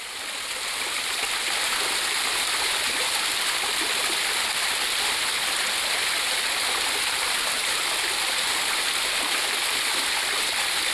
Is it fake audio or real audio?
real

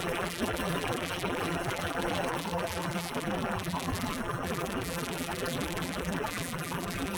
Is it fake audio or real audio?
fake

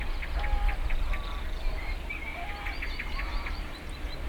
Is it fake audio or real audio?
real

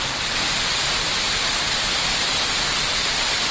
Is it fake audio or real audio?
real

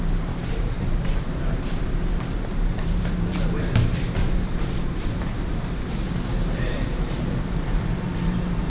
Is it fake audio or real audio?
fake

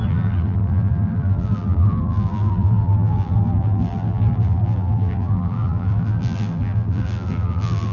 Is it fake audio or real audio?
fake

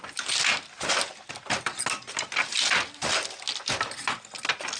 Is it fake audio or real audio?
real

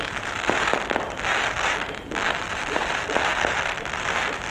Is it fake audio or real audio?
fake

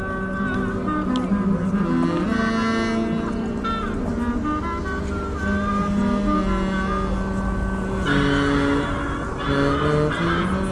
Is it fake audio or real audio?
real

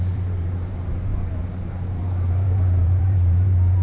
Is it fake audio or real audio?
fake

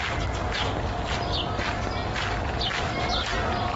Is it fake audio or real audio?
real